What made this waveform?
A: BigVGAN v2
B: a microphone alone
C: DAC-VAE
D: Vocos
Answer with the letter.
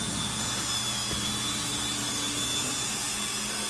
B